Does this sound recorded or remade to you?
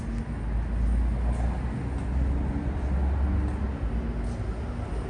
recorded